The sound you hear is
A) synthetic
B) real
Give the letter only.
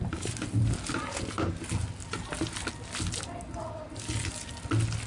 B